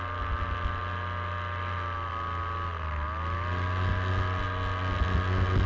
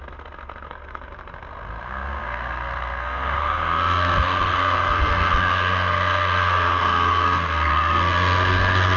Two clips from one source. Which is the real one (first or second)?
first